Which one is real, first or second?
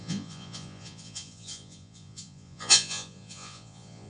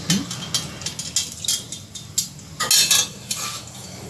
second